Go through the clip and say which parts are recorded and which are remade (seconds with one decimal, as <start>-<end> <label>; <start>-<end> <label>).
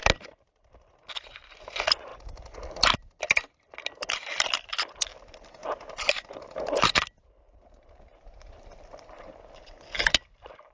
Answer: 0.0-1.1 recorded; 1.1-2.1 remade; 2.1-2.7 recorded; 2.7-5.1 remade; 5.1-6.6 recorded; 6.6-10.7 remade